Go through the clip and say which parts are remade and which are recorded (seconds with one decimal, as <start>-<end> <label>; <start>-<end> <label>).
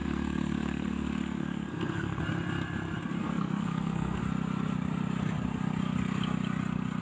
0.0-2.2 remade; 2.2-3.2 recorded; 3.2-4.2 remade; 4.2-7.0 recorded